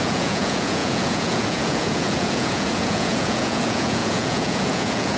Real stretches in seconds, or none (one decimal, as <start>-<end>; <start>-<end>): none